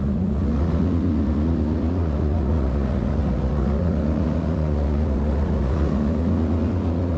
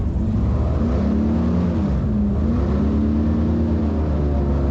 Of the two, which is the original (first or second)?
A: second